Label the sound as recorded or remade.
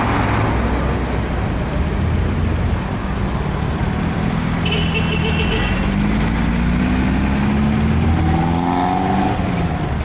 recorded